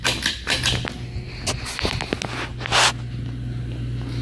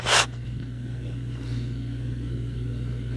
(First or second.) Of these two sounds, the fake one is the second